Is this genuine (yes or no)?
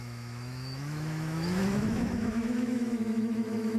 no